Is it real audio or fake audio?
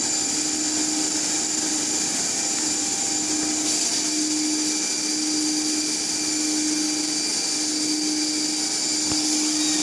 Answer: real